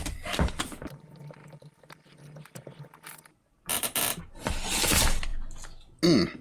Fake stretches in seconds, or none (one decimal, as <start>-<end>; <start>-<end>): none